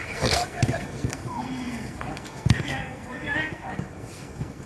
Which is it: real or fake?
fake